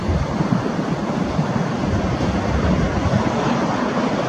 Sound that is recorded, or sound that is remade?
recorded